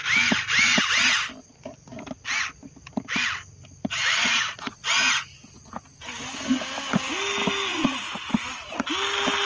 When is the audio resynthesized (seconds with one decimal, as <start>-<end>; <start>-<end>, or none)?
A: 4.2-5.2; 7.7-8.9